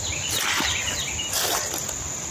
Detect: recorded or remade recorded